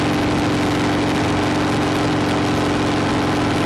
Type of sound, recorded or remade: recorded